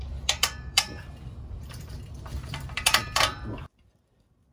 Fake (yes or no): yes